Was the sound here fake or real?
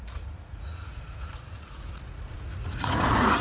fake